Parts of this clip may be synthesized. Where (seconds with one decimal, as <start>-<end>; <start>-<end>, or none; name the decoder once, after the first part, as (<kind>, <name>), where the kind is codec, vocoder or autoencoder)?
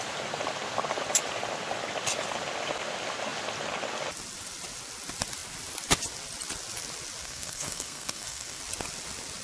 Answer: 7.2-8.6 (codec, SNAC)